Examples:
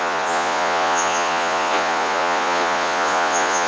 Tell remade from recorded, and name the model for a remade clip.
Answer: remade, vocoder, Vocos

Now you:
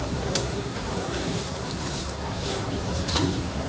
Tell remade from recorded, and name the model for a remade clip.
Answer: remade, codec, SNAC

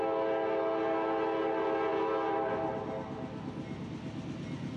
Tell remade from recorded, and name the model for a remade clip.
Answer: recorded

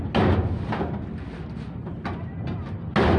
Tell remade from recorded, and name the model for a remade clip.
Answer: recorded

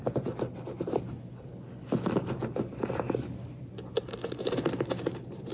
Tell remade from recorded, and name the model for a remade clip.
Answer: recorded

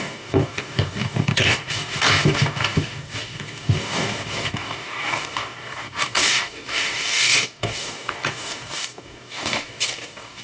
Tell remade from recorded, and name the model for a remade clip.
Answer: remade, codec, DAC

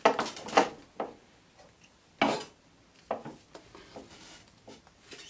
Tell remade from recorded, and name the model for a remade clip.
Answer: recorded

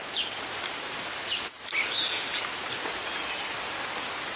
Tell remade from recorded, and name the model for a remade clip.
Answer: recorded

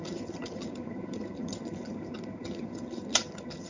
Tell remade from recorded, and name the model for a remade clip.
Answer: remade, vocoder, HiFi-GAN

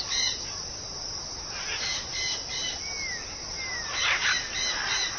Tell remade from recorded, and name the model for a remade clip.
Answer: recorded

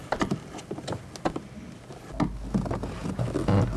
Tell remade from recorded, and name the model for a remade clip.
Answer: recorded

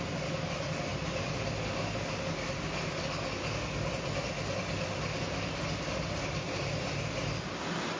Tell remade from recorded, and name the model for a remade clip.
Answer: recorded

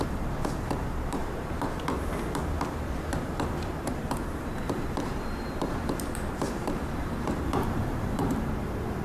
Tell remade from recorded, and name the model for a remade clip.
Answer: remade, vocoder, BigVGAN v2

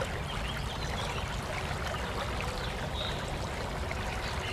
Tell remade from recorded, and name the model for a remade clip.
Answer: recorded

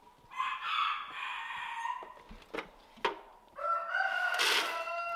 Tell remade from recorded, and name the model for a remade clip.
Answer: recorded